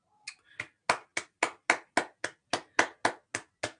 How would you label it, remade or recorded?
recorded